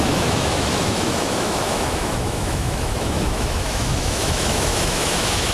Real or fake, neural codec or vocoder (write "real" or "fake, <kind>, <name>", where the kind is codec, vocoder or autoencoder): fake, autoencoder, DAC-VAE